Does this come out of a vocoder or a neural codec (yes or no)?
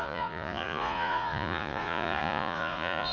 yes